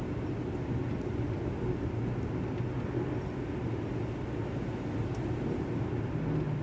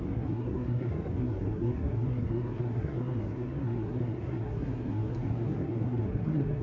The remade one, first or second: second